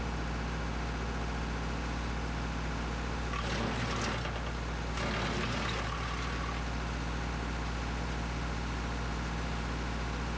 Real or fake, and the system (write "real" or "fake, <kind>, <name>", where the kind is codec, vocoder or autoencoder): real